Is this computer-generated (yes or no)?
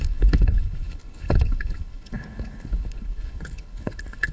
yes